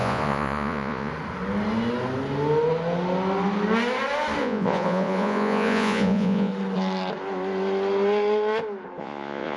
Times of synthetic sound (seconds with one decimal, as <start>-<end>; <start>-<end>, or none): 0.0-1.1; 4.4-6.5; 9.0-9.6